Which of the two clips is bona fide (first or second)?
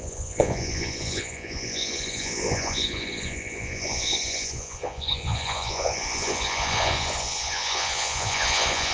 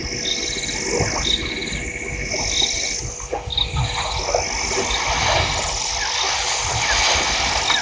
second